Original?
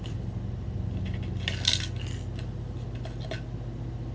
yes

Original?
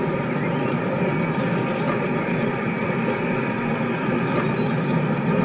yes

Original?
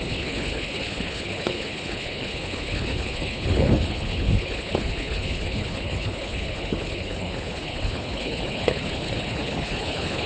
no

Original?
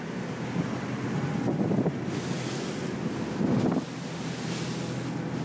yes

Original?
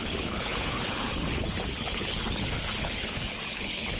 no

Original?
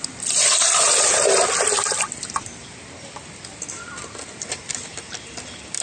yes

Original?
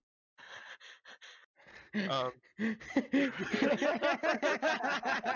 yes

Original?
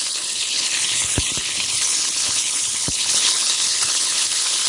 no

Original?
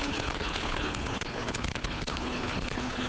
no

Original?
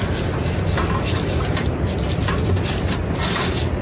yes